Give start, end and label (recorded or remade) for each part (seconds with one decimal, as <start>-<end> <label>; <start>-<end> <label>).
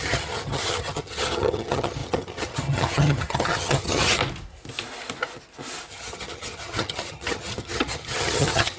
0.0-4.2 remade; 4.2-5.9 recorded; 5.9-8.8 remade